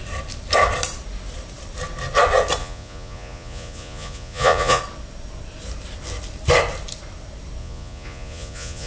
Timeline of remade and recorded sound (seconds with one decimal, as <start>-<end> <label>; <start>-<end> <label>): 0.0-2.6 recorded; 2.6-4.8 remade; 4.8-7.6 recorded; 7.6-8.9 remade